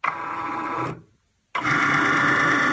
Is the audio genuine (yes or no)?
yes